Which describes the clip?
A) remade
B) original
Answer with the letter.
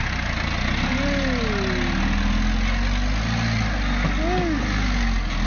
B